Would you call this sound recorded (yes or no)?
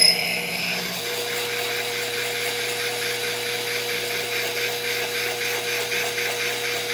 yes